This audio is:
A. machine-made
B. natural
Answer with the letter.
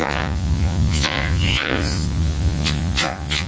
A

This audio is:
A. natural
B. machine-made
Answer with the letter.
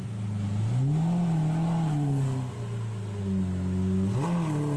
A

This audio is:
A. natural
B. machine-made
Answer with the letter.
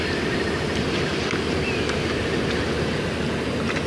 A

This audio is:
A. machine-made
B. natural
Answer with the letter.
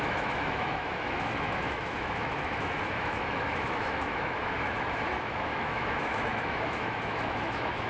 A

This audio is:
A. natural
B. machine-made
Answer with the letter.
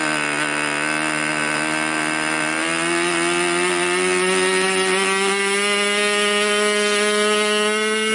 A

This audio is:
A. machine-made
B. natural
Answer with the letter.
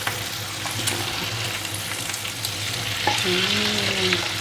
B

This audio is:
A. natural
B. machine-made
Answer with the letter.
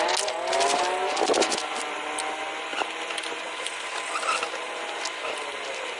A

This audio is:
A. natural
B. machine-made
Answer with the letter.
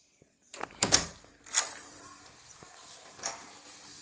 A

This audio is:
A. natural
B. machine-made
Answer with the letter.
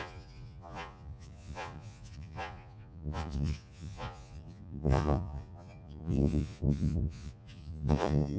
B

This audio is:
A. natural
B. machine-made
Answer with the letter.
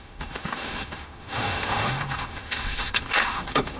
B